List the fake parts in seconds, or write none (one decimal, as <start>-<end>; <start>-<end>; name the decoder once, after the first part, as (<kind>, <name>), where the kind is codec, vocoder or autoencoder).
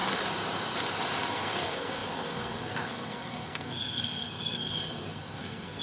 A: 1.3-5.8 (codec, SNAC)